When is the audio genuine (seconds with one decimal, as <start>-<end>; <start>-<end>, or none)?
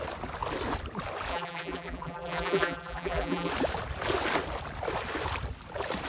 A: 0.0-1.3; 3.5-6.1